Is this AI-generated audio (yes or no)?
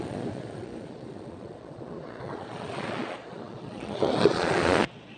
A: yes